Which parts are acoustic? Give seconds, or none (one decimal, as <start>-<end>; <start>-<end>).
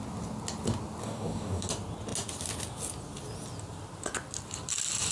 0.0-1.0; 1.7-5.1